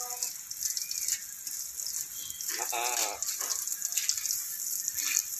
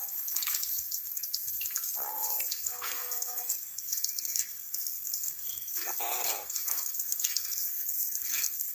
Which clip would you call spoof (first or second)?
second